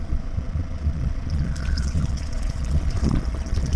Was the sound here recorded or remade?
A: remade